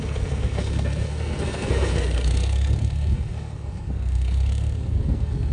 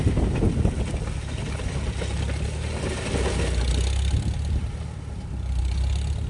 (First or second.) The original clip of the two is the second